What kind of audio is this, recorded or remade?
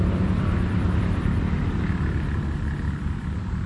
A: recorded